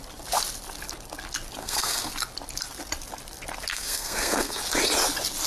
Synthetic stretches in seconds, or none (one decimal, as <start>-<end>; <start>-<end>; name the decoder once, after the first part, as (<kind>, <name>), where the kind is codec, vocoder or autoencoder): 1.6-2.1 (codec, SNAC); 3.7-4.6